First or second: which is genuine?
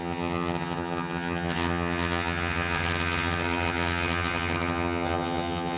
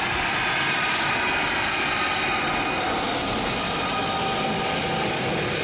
second